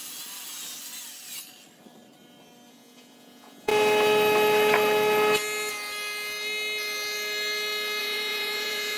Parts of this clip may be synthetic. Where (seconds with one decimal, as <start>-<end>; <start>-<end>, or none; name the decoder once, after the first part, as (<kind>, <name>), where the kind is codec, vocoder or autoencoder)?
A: 2.7-3.7 (vocoder, Vocos); 8.0-9.0